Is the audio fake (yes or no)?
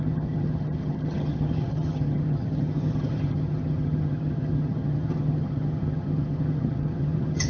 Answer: yes